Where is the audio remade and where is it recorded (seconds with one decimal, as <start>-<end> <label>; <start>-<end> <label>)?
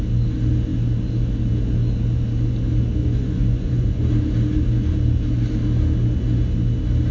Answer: 0.0-3.0 recorded; 3.0-4.0 remade; 4.0-7.1 recorded